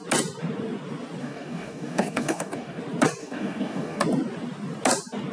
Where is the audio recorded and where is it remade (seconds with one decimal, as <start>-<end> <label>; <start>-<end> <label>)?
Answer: 0.0-1.2 recorded; 1.2-2.8 remade; 2.8-3.2 recorded; 3.2-4.0 remade; 4.0-5.3 recorded